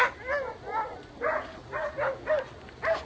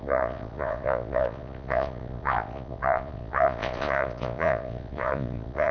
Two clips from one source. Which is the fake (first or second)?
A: second